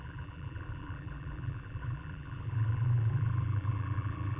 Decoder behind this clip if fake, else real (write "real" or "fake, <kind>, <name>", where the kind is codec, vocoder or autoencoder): fake, vocoder, BigVGAN v2